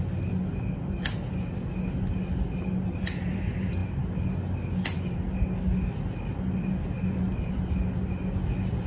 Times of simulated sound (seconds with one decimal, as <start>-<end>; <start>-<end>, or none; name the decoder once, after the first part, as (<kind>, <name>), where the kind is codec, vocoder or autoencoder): none